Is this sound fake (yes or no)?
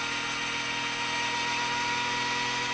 no